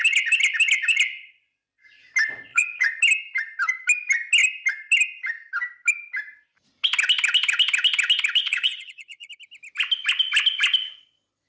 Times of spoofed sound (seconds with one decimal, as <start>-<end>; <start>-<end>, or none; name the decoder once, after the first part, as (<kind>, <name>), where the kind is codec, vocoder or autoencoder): 2.5-3.0 (vocoder, Vocos); 8.4-9.3